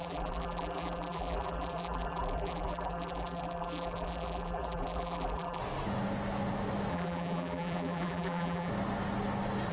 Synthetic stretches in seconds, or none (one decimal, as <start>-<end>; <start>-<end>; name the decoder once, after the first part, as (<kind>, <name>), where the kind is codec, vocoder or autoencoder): 0.0-5.6 (vocoder, BigVGAN v2); 6.9-8.7